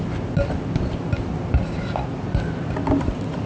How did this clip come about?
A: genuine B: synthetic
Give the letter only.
A